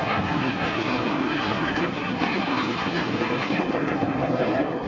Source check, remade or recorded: remade